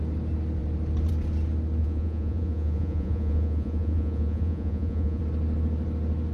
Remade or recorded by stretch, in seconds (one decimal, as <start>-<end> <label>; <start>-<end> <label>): 0.0-1.8 recorded; 1.8-5.2 remade; 5.2-6.3 recorded